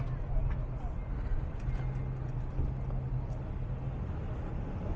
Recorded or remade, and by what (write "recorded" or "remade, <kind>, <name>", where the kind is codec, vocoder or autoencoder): recorded